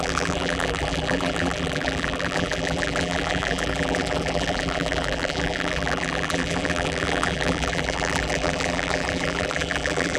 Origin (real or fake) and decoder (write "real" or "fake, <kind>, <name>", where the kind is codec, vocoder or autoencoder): fake, vocoder, BigVGAN v2